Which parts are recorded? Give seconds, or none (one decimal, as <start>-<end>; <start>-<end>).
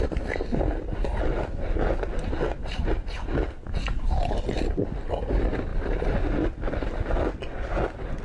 0.0-8.2